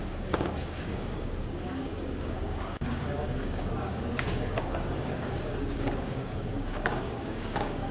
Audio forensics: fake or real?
fake